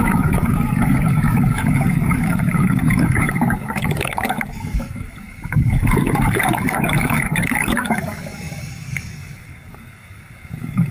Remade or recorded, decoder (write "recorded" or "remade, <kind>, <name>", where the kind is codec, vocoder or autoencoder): remade, codec, DAC